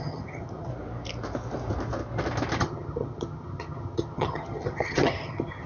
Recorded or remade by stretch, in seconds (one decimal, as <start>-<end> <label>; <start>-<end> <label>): 0.0-0.7 remade; 0.7-2.6 recorded; 2.6-5.7 remade